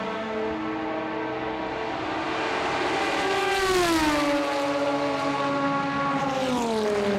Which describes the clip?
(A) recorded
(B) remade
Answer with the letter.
A